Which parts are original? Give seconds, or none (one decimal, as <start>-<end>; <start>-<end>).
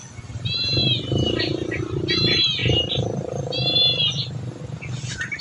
0.0-5.4